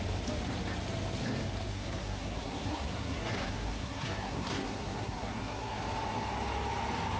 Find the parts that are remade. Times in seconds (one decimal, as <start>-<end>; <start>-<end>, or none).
1.7-5.8